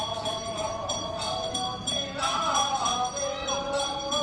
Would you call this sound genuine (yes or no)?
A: no